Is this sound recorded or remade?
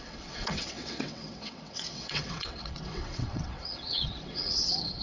remade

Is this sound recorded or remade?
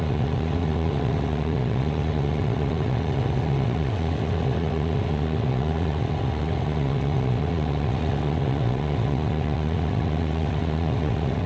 remade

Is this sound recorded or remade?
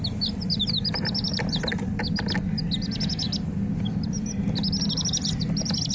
recorded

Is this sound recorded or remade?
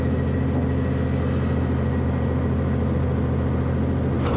recorded